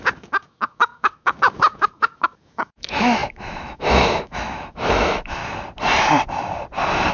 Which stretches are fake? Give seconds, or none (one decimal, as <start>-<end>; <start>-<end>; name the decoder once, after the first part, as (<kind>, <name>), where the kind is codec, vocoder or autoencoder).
0.0-5.4 (autoencoder, DAC-VAE)